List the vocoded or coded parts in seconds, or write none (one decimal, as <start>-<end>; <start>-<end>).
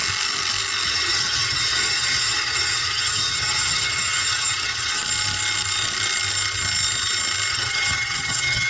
0.9-5.0; 7.5-8.7